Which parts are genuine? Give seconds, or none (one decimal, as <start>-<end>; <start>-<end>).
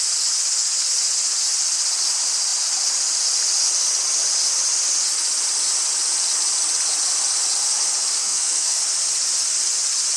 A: 0.0-8.2; 8.8-10.2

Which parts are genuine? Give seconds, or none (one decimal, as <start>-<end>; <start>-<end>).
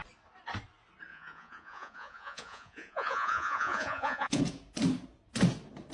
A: 0.0-1.1; 4.4-5.9